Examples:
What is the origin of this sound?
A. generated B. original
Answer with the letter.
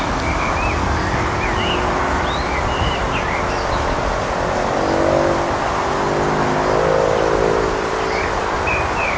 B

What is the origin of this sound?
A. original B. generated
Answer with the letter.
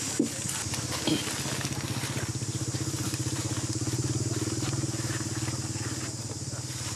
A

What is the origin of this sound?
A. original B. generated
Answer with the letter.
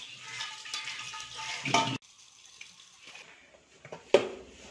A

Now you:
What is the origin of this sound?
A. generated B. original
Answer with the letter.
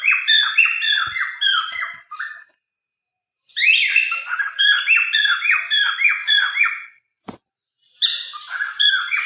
A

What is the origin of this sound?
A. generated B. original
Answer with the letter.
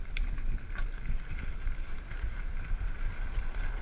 B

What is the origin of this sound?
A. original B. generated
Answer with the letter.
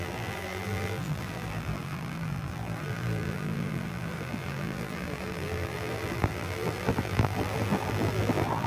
B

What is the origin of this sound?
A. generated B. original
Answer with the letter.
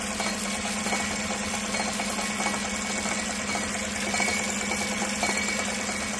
B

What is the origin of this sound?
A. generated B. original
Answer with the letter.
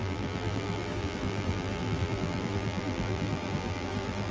A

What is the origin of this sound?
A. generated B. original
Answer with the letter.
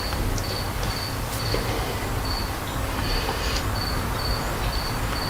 B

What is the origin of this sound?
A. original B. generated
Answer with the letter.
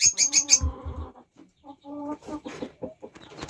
B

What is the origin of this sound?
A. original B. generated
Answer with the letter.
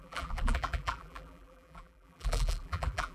B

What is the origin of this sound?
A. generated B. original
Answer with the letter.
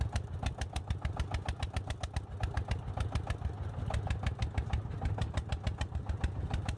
B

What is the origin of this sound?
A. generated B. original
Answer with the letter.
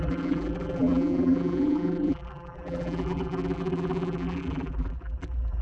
A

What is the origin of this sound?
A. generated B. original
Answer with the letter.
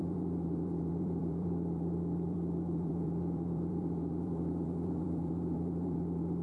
A